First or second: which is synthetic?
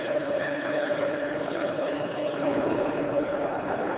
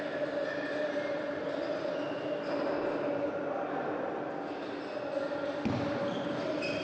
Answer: first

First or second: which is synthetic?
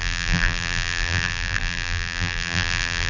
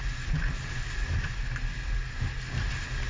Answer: first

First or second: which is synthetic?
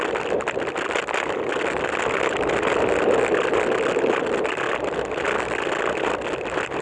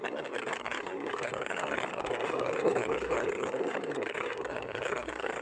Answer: second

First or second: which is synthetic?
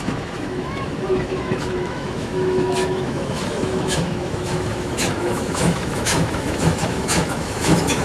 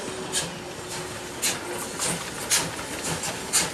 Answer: first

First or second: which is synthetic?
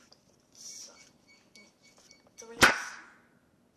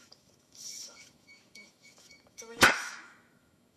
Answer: second